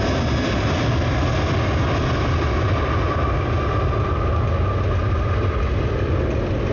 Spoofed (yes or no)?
no